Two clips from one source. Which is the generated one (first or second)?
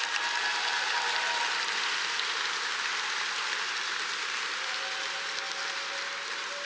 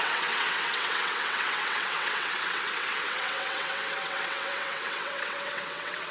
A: second